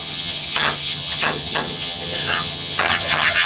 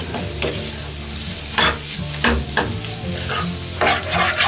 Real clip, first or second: second